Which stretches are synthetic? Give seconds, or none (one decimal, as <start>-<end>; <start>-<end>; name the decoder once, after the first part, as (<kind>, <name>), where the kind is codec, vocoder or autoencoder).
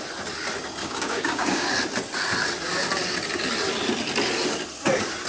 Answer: 0.8-1.7 (codec, DAC)